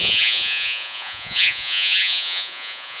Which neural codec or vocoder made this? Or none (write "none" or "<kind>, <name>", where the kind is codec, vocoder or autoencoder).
vocoder, Vocos